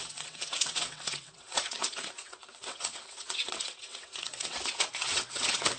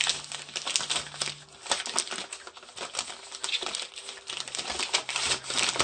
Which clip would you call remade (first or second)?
first